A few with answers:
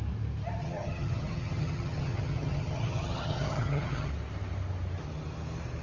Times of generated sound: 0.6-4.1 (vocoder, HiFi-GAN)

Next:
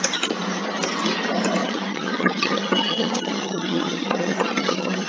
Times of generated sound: 1.6-5.1 (vocoder, HiFi-GAN)

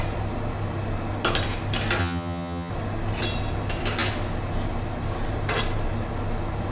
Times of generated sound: 2.0-2.7 (vocoder, HiFi-GAN)

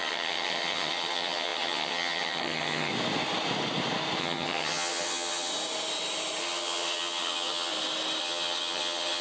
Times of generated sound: 0.0-2.9 (vocoder, HiFi-GAN); 4.2-5.5; 6.4-7.7; 8.2-9.2